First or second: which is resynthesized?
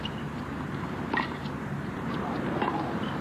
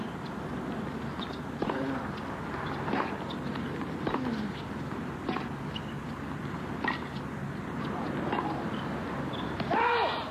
first